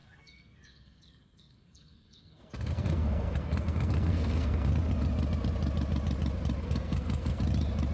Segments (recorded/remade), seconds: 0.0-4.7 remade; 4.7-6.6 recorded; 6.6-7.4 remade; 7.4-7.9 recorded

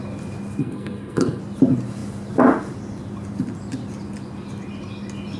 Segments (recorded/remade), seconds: 0.0-0.6 recorded; 0.6-1.4 remade; 1.4-5.4 recorded

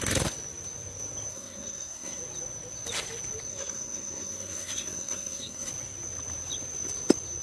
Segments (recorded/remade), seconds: 0.0-1.3 recorded; 1.3-2.2 remade; 2.2-3.5 recorded; 3.5-5.7 remade; 5.7-7.4 recorded

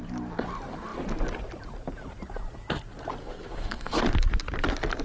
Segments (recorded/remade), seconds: 0.0-3.2 recorded; 3.2-4.0 remade; 4.0-5.0 recorded

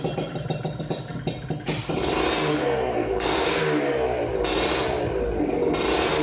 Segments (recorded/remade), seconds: 0.0-2.5 recorded; 2.5-3.6 remade; 3.6-6.2 recorded

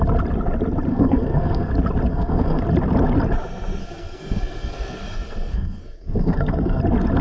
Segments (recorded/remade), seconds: 0.0-0.9 recorded; 0.9-1.7 remade; 1.7-2.1 recorded; 2.1-2.6 remade; 2.6-3.8 recorded; 3.8-6.8 remade; 6.8-7.2 recorded